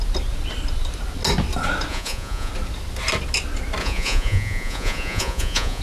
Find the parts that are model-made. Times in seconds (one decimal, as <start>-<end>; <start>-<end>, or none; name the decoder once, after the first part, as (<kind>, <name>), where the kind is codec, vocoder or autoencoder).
1.9-2.5 (vocoder, Vocos); 3.8-5.8